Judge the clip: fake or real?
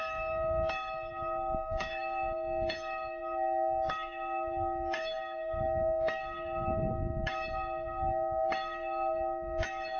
fake